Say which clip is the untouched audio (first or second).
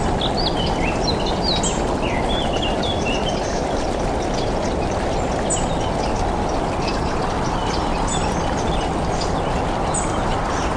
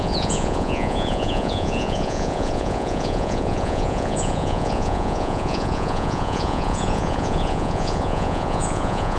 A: first